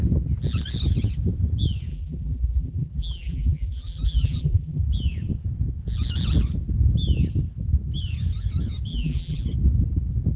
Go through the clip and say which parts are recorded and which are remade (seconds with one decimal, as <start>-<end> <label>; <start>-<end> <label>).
0.0-1.9 recorded; 1.9-4.9 remade; 4.9-8.9 recorded; 8.9-9.4 remade; 9.4-10.4 recorded